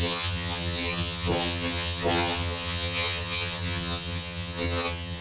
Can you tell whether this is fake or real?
fake